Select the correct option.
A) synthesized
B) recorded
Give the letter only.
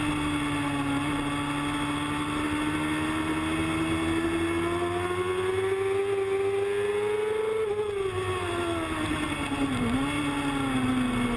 B